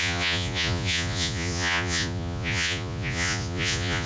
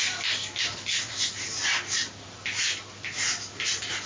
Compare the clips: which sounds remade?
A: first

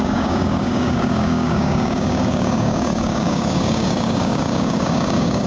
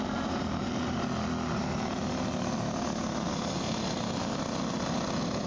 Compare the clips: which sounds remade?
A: first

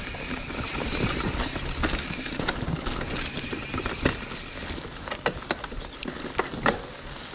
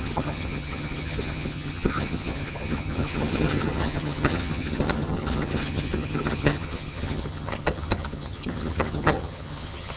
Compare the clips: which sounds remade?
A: second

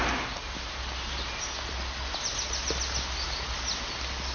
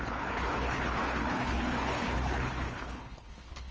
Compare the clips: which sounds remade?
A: second